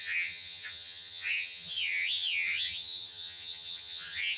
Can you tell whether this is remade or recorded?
remade